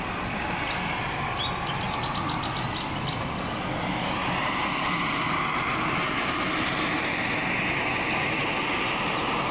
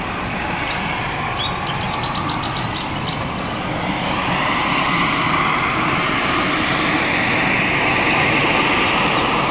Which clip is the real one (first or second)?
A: first